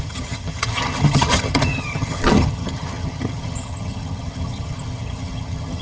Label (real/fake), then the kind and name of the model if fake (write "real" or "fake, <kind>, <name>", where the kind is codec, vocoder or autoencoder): fake, vocoder, HiFi-GAN